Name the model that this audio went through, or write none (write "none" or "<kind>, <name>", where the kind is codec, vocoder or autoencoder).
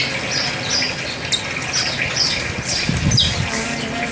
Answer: none